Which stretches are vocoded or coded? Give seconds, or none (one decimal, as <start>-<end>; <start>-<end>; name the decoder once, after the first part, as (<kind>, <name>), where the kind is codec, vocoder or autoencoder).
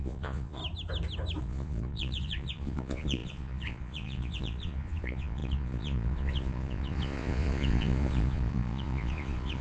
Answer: 0.0-0.6 (vocoder, Vocos); 1.4-9.6